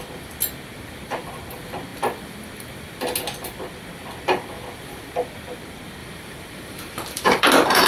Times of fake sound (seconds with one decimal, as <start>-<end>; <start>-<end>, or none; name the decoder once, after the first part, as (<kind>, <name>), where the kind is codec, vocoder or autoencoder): 6.0-7.9 (vocoder, BigVGAN v2)